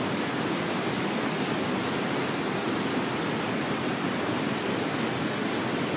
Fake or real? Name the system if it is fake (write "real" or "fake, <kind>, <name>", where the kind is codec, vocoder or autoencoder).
real